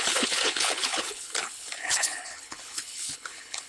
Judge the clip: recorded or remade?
remade